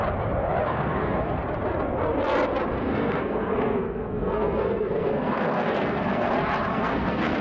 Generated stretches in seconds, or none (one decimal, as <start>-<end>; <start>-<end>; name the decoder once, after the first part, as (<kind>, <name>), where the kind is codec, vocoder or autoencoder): 0.6-1.3 (codec, SNAC); 2.8-6.3; 6.7-7.4